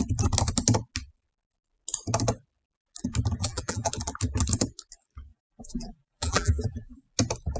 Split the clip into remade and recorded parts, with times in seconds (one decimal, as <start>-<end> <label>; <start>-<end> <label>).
0.0-3.4 recorded; 3.4-3.9 remade; 3.9-5.3 recorded; 5.3-7.0 remade; 7.0-7.6 recorded